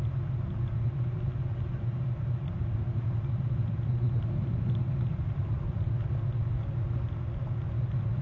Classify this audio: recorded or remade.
recorded